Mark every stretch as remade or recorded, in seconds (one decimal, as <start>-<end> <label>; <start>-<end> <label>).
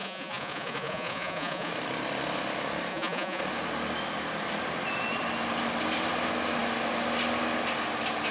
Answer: 0.0-1.7 remade; 1.7-2.9 recorded; 2.9-3.4 remade; 3.4-8.3 recorded